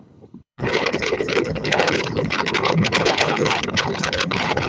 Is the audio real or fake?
fake